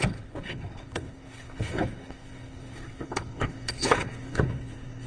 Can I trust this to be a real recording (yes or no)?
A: no